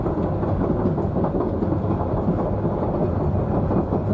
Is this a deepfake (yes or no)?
no